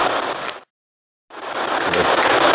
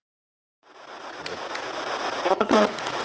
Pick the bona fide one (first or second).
first